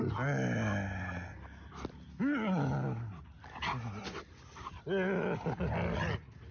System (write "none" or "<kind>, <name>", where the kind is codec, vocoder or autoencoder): none